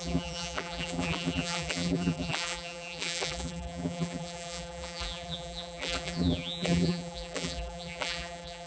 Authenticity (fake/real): fake